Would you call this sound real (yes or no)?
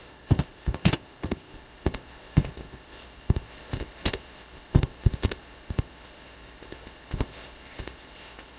no